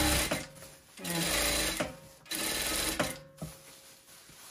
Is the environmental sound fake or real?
real